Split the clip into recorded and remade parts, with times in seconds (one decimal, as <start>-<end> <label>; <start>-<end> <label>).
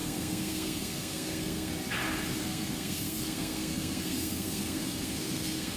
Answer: 0.0-1.7 remade; 1.7-2.4 recorded; 2.4-5.8 remade